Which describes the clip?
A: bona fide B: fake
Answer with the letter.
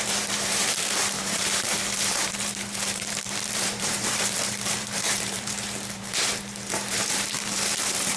B